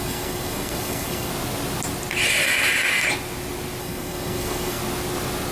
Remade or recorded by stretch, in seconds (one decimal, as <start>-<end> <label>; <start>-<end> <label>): 0.0-1.3 remade; 1.3-3.8 recorded; 3.8-4.8 remade; 4.8-5.5 recorded

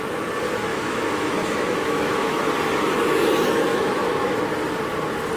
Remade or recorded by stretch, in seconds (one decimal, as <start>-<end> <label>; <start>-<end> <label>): 0.0-0.7 recorded; 0.7-2.4 remade; 2.4-3.7 recorded; 3.7-4.4 remade; 4.4-5.4 recorded

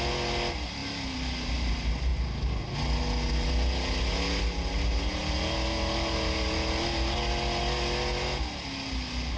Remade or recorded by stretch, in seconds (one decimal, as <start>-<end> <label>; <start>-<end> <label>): 0.0-9.4 recorded

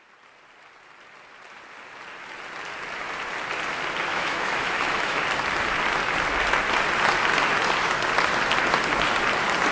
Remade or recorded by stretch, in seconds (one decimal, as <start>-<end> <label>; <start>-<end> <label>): 0.0-4.1 recorded; 4.1-5.2 remade; 5.2-9.7 recorded

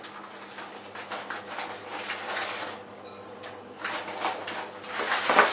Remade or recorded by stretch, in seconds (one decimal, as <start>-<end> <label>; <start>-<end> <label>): 0.0-5.5 recorded

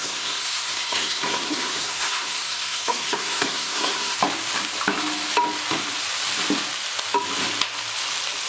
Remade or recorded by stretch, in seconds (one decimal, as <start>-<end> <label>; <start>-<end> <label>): 0.0-4.2 remade; 4.2-8.5 recorded